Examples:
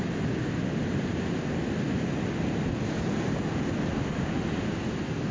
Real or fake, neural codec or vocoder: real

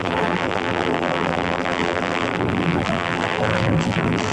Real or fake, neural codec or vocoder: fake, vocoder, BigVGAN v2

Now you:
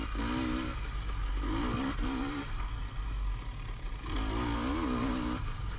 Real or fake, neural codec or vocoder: real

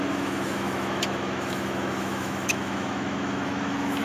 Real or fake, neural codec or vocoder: fake, autoencoder, DAC-VAE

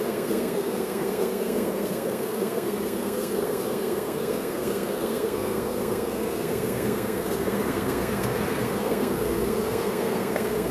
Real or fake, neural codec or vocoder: fake, codec, SNAC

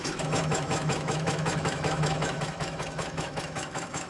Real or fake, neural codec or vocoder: fake, autoencoder, DAC-VAE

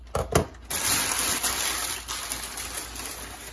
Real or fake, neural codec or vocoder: real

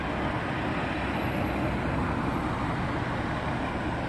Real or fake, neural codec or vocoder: real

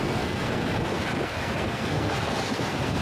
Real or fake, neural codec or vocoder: fake, codec, SNAC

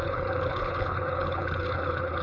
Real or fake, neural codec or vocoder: fake, codec, HILCodec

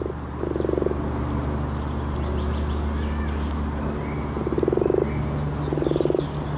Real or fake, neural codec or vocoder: real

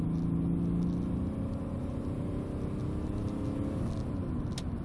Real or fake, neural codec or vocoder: real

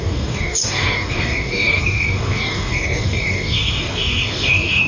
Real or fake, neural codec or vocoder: fake, codec, DAC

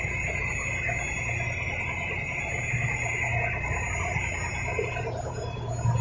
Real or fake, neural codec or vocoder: real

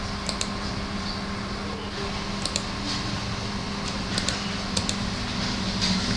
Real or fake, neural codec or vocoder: real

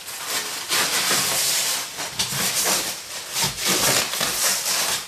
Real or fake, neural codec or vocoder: real